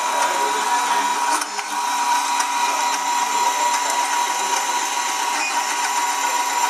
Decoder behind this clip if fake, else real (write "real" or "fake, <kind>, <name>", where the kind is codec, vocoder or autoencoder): real